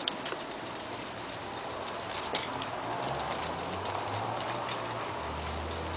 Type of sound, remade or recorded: remade